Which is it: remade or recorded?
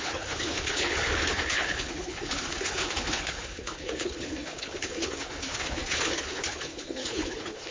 remade